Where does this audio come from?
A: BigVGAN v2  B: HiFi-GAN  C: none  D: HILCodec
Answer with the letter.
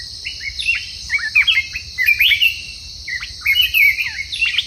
C